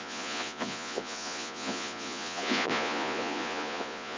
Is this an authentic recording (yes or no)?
no